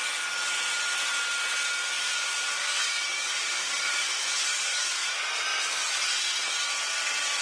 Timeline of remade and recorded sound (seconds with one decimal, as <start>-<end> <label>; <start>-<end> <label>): 0.0-1.8 recorded; 1.8-4.0 remade; 4.0-4.4 recorded; 4.4-5.1 remade; 5.1-7.4 recorded